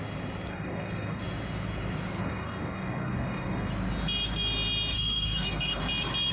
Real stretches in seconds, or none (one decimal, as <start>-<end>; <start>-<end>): 0.0-0.5; 1.2-2.2; 3.7-4.9; 5.8-6.3